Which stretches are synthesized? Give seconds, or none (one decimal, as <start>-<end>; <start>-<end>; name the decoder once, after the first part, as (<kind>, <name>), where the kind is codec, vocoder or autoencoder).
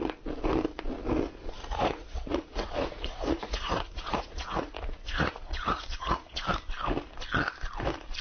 1.6-6.4 (vocoder, Vocos)